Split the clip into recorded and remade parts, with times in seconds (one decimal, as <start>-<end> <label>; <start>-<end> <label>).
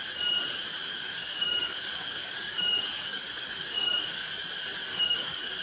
0.0-0.9 recorded; 0.9-4.3 remade; 4.3-4.9 recorded; 4.9-5.6 remade